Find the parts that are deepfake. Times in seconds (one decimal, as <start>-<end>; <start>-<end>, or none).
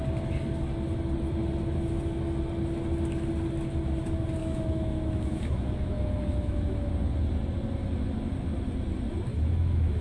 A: 4.4-6.9; 9.3-10.0